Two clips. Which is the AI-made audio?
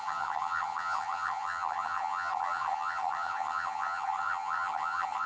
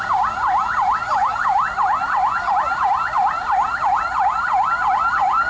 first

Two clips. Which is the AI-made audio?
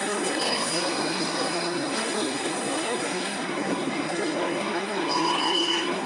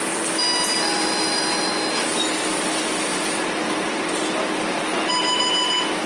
first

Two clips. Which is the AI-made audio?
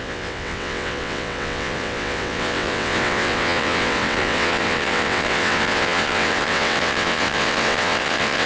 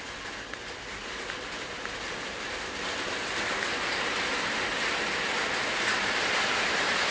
first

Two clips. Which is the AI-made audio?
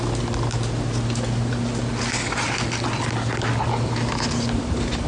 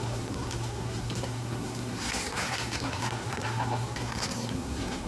second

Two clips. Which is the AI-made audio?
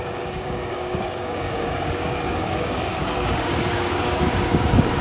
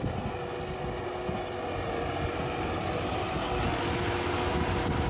first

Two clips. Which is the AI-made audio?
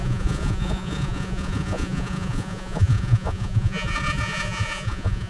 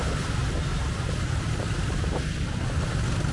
first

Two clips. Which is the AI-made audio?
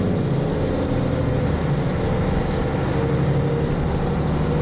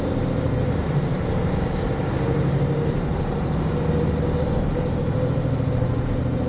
second